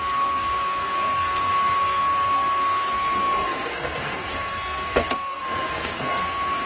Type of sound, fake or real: fake